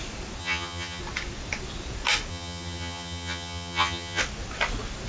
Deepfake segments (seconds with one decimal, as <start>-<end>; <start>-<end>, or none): 0.4-1.0; 2.3-4.2